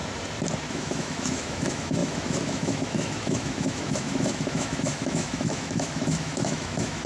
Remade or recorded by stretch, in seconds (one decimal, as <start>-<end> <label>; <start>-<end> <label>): 0.0-0.7 recorded; 0.7-7.1 remade